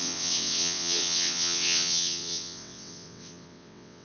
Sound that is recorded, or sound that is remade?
remade